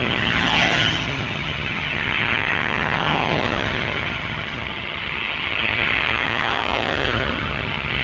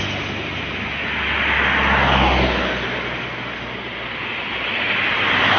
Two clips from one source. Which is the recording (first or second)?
second